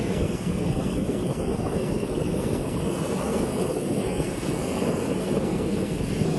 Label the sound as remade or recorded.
remade